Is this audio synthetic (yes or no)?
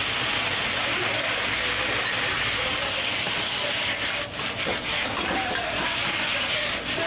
no